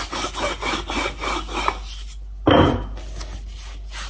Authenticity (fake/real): real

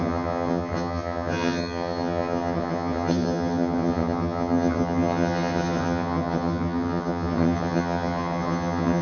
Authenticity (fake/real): fake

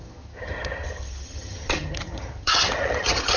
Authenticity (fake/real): fake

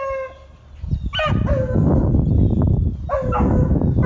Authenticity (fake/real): real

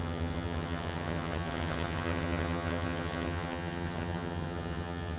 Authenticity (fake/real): fake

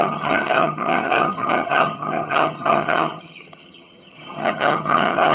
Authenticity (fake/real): fake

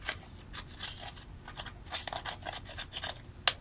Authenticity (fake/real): real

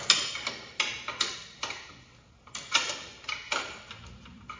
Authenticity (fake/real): real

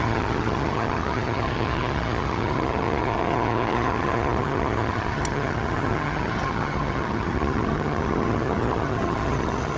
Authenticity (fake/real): fake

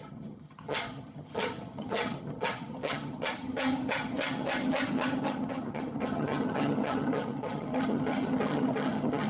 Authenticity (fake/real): fake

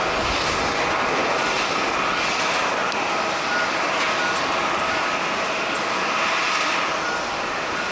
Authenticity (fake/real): real